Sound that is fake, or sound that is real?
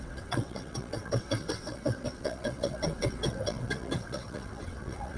fake